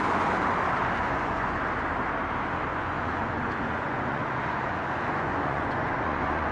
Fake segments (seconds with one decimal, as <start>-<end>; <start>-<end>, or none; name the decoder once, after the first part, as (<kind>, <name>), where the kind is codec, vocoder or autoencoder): 1.0-1.6 (vocoder, Vocos); 2.7-6.5